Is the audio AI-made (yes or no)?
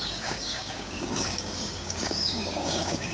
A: yes